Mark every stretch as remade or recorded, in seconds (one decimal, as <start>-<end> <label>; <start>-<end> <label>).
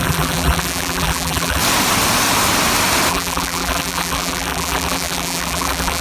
0.0-1.6 remade; 1.6-3.1 recorded; 3.1-6.0 remade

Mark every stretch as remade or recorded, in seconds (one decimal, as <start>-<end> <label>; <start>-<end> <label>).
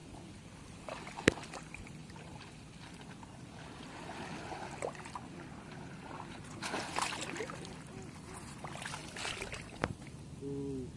0.0-0.8 remade; 0.8-2.0 recorded; 2.0-3.0 remade; 3.0-9.0 recorded; 9.0-10.0 remade; 10.0-11.0 recorded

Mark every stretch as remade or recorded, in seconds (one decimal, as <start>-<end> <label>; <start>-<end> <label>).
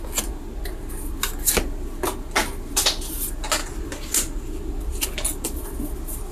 0.0-6.3 recorded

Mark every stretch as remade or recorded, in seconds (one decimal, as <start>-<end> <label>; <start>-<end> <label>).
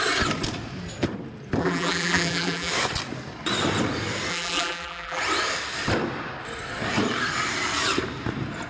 0.0-1.6 recorded; 1.6-2.7 remade; 2.7-4.3 recorded; 4.3-5.2 remade; 5.2-8.7 recorded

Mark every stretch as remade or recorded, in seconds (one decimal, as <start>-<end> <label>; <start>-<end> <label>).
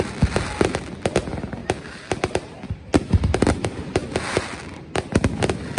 0.0-5.8 recorded